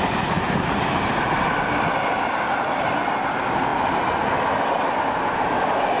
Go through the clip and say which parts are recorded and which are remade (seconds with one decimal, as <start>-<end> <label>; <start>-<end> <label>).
0.0-6.0 recorded